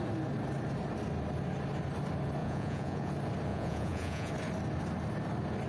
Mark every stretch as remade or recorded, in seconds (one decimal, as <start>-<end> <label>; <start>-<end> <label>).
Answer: 0.0-2.4 recorded; 2.4-3.1 remade; 3.1-3.5 recorded; 3.5-4.3 remade; 4.3-5.7 recorded